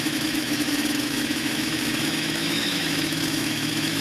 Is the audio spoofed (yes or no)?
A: yes